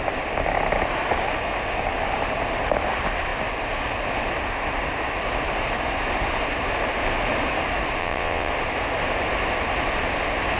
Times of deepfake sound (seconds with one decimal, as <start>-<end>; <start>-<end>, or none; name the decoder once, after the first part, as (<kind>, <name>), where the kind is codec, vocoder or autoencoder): 8.0-8.5 (vocoder, WaveNeXt)